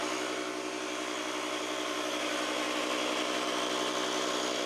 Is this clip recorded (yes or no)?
yes